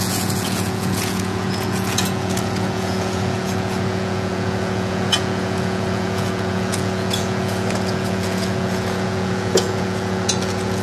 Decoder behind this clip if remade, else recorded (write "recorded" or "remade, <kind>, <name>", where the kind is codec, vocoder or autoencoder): remade, vocoder, Vocos